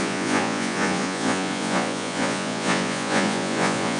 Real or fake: fake